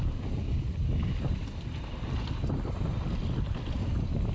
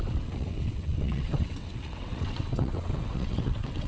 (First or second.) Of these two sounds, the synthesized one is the second